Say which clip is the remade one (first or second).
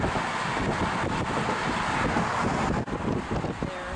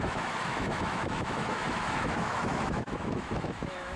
second